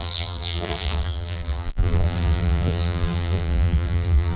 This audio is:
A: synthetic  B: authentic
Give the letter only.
A